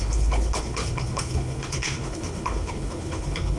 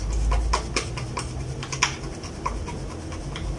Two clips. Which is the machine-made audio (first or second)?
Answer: first